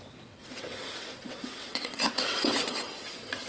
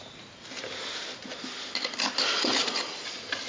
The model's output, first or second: first